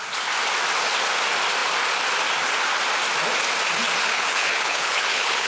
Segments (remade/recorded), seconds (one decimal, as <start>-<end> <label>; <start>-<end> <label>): 0.0-4.0 recorded; 4.0-5.5 remade